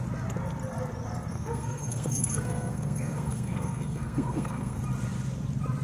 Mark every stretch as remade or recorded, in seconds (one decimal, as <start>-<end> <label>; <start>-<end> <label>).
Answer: 0.0-1.3 recorded; 1.3-4.8 remade; 4.8-5.8 recorded